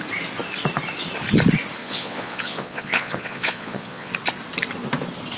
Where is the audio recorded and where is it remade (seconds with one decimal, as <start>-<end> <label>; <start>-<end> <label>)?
0.0-1.8 recorded; 1.8-4.1 remade; 4.1-5.4 recorded